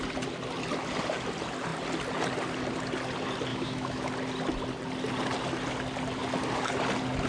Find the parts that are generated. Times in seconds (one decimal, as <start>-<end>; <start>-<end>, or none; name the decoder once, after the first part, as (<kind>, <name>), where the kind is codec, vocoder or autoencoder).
3.5-4.1 (autoencoder, DAC-VAE)